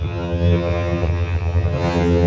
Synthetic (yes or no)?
yes